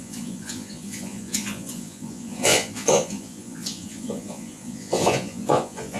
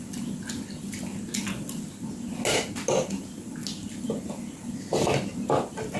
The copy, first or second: first